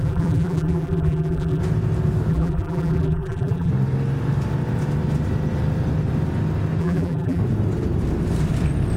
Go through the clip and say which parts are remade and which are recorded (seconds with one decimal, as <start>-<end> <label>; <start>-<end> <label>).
0.0-1.6 remade; 1.6-2.3 recorded; 2.3-3.7 remade; 3.7-6.8 recorded; 6.8-7.4 remade; 7.4-9.0 recorded